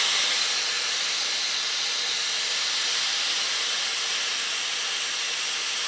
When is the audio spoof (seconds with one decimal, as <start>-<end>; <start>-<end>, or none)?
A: none